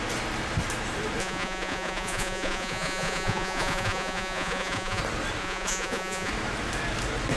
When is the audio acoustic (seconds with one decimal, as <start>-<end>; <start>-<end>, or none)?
0.0-1.2; 5.0-5.4; 6.3-7.4